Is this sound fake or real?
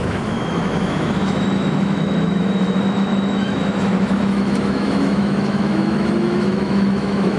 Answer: fake